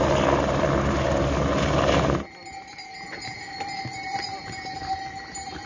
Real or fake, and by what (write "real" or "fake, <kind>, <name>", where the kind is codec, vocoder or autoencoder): real